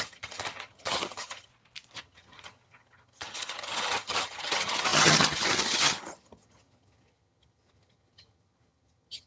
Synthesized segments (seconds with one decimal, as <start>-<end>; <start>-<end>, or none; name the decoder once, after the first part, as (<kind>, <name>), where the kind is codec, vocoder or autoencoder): 0.0-1.5 (vocoder, HiFi-GAN); 2.0-9.3